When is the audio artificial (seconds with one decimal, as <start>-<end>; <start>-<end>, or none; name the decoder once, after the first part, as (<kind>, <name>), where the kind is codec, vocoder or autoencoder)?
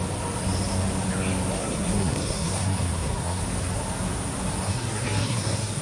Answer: 1.6-3.4 (codec, SNAC); 4.6-5.8